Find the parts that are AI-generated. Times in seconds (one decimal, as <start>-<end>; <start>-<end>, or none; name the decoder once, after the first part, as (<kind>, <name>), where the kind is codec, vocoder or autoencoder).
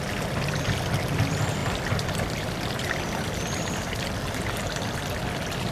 1.6-4.8 (vocoder, BigVGAN v2)